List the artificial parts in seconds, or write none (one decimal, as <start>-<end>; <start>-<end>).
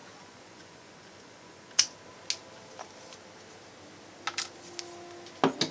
0.0-1.7